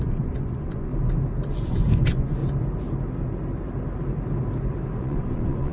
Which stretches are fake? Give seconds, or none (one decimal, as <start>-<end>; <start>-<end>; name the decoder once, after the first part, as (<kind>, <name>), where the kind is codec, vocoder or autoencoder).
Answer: 0.0-0.9 (vocoder, Vocos); 1.5-2.4; 5.0-5.7